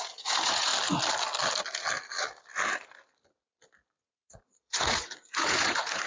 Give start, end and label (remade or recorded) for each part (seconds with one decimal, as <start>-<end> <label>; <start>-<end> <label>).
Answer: 0.0-0.7 remade; 0.7-4.0 recorded; 4.0-6.1 remade

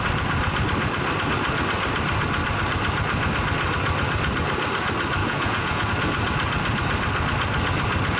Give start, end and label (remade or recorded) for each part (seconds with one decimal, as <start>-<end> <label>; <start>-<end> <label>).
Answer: 0.0-5.2 recorded; 5.2-5.9 remade; 5.9-8.2 recorded

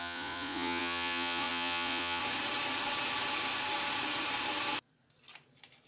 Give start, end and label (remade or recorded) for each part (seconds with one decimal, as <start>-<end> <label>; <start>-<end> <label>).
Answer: 0.0-2.2 remade; 2.2-5.9 recorded

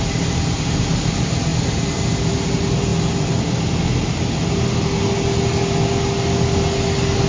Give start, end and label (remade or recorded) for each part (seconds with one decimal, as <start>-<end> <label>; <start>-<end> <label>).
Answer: 0.0-7.3 recorded

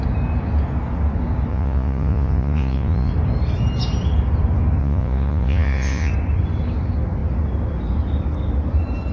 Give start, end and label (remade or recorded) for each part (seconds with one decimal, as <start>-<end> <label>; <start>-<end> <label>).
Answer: 0.0-1.5 recorded; 1.5-3.1 remade; 3.1-4.8 recorded; 4.8-6.1 remade; 6.1-9.1 recorded